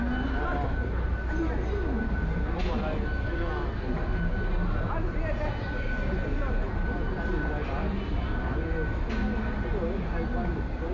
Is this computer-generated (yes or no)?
no